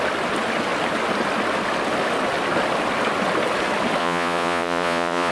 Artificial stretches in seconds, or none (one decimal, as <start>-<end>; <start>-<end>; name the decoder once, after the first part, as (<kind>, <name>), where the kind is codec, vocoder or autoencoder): 4.0-5.3 (vocoder, Vocos)